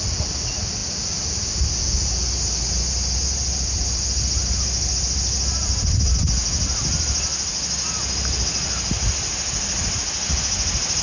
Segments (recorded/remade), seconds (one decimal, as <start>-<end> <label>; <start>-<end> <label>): 0.0-11.0 recorded